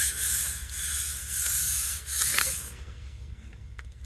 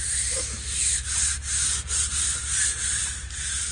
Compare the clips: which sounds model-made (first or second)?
first